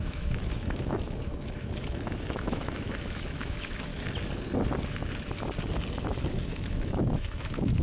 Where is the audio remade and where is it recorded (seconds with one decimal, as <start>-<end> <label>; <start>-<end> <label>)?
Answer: 0.0-3.9 remade; 3.9-6.4 recorded; 6.4-7.8 remade